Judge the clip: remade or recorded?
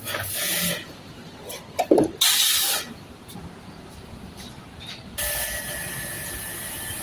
remade